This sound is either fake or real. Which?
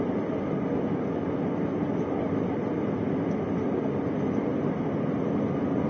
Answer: real